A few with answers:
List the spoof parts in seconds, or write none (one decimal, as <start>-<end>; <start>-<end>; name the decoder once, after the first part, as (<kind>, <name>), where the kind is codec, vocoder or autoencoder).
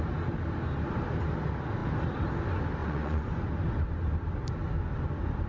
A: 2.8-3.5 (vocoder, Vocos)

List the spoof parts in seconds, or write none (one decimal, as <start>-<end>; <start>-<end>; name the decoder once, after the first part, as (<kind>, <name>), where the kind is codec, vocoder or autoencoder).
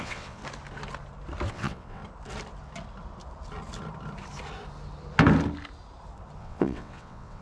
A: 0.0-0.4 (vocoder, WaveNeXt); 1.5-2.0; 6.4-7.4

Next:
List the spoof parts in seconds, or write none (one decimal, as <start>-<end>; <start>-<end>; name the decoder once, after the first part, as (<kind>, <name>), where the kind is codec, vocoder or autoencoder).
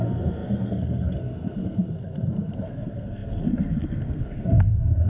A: 0.0-5.1 (codec, SNAC)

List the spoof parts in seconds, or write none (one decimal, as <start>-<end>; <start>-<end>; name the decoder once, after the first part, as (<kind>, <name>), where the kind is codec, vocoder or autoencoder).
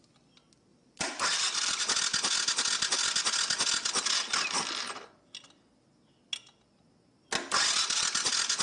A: 0.7-1.8 (vocoder, BigVGAN v2)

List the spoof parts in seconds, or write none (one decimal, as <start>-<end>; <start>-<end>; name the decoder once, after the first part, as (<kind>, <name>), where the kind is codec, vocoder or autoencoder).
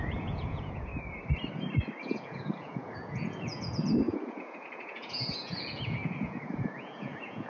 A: 0.0-0.9 (vocoder, Vocos); 2.0-7.5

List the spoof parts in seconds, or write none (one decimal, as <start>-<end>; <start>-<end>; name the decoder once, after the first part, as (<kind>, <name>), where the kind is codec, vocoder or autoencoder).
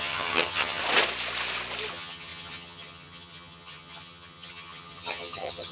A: 0.0-0.8 (vocoder, HiFi-GAN); 1.9-5.7